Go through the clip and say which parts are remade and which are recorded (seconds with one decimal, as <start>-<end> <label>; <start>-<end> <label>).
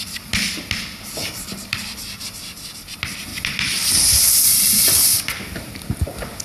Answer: 0.0-1.2 recorded; 1.2-1.8 remade; 1.8-5.0 recorded; 5.0-5.8 remade; 5.8-6.4 recorded